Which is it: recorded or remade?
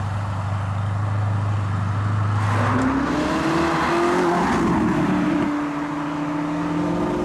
recorded